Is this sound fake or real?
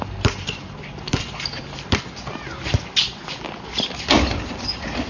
real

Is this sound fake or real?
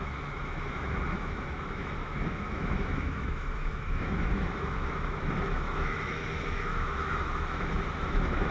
fake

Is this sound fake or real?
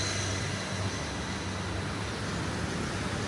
real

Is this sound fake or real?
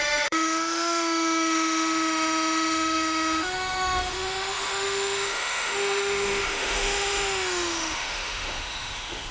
fake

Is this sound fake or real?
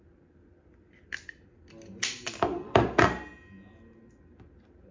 real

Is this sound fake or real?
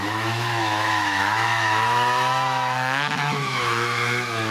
fake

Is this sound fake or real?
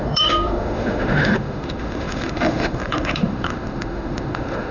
fake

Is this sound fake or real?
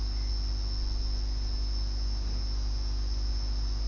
real